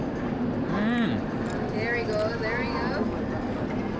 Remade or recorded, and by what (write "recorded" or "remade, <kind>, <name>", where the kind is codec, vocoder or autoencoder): recorded